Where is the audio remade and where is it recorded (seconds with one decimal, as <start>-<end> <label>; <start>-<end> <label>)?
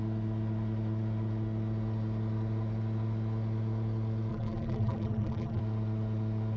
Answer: 0.0-4.3 recorded; 4.3-5.6 remade; 5.6-6.6 recorded